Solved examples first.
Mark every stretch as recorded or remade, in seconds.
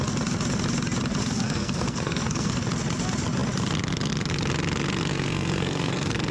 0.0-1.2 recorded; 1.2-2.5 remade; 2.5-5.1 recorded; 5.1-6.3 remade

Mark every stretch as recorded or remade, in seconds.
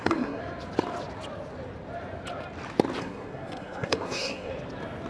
0.0-0.4 remade; 0.4-3.0 recorded; 3.0-4.5 remade; 4.5-5.1 recorded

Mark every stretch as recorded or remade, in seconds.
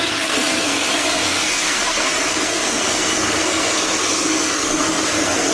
0.0-5.5 remade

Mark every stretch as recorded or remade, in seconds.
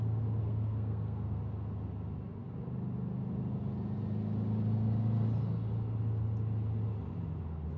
0.0-0.4 recorded; 0.4-1.4 remade; 1.4-7.8 recorded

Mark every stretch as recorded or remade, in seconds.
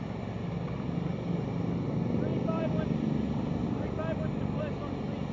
0.0-5.3 recorded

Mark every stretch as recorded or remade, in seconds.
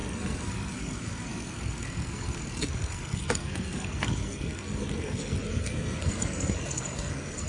0.0-7.5 remade